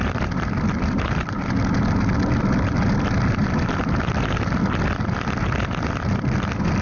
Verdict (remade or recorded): recorded